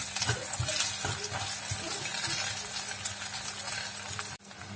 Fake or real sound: real